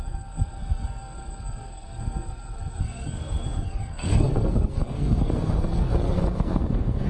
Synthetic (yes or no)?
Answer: yes